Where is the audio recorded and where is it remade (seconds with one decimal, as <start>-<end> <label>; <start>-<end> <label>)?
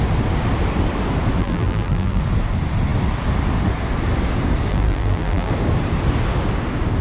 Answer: 0.0-1.4 recorded; 1.4-2.2 remade; 2.2-4.7 recorded; 4.7-5.5 remade; 5.5-7.0 recorded